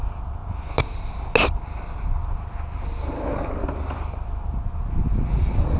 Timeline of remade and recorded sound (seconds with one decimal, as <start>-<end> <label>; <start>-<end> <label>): 0.0-5.8 recorded